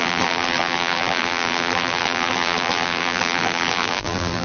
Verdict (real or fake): fake